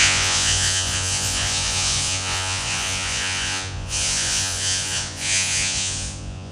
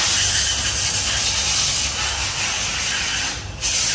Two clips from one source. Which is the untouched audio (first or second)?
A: second